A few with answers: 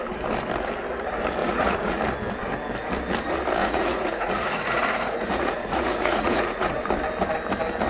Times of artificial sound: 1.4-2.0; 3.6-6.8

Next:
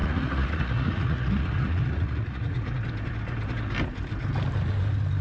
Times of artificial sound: 0.0-2.8

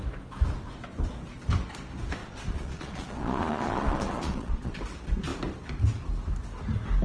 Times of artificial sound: 2.2-4.8

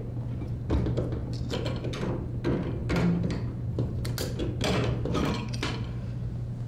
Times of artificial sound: none

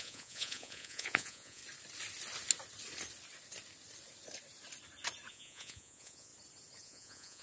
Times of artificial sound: 0.0-1.6; 5.3-6.3; 6.8-7.4

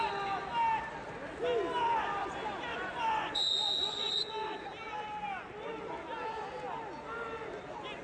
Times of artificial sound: 2.7-4.3

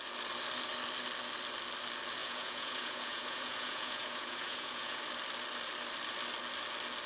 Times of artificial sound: 2.2-5.0

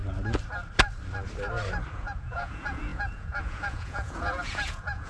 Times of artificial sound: 1.9-5.1